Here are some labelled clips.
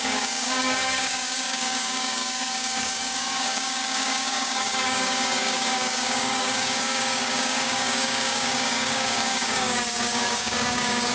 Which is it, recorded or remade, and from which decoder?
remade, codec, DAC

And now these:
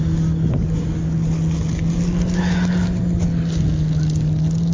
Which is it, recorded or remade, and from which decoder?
recorded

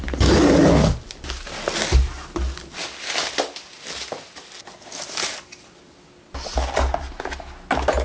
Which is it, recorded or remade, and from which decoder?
recorded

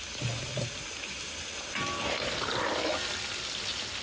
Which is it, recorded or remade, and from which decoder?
recorded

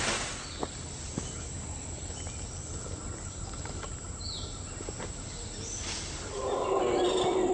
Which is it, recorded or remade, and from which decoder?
recorded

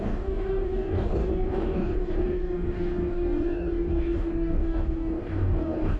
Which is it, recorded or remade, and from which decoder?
remade, codec, DAC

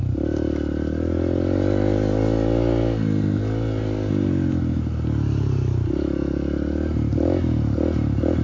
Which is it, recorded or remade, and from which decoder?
recorded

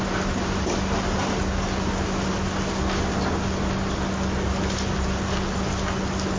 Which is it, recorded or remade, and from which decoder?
recorded